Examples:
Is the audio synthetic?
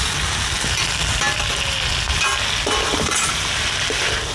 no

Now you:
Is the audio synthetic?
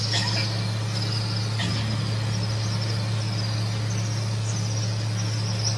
no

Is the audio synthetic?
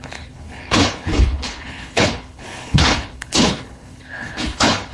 yes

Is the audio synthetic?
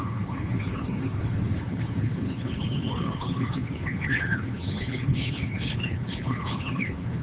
yes